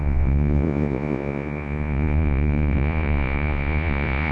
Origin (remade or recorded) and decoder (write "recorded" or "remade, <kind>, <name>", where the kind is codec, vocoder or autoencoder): remade, vocoder, Vocos